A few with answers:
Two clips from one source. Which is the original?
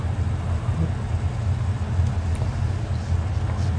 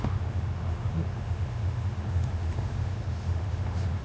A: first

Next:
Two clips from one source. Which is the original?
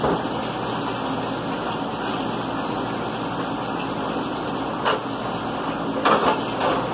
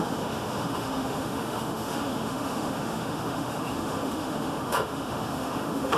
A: first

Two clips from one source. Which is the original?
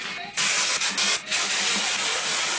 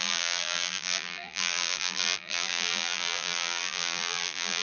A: first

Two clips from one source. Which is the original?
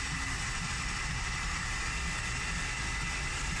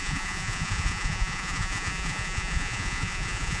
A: first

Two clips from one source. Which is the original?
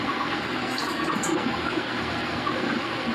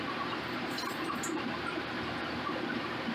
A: second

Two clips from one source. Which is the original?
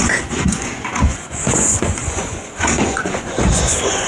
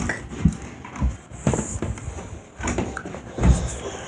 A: second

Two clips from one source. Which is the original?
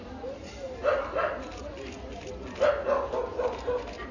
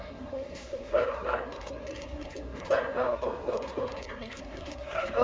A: first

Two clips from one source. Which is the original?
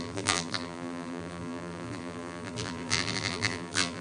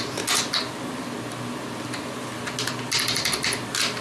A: second